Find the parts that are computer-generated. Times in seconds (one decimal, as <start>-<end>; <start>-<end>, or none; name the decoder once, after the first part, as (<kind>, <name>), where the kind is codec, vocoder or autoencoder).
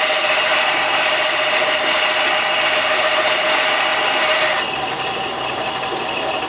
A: none